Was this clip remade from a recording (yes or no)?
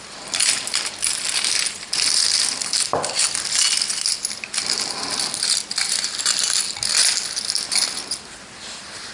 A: no